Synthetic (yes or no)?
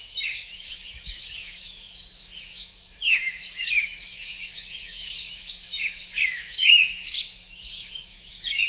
yes